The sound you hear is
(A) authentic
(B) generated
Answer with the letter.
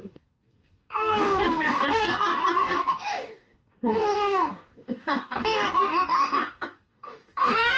B